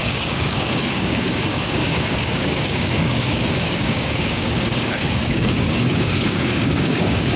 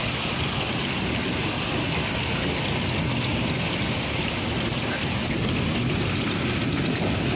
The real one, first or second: second